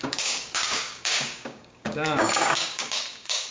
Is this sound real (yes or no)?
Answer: no